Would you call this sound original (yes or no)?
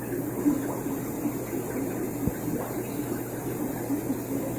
yes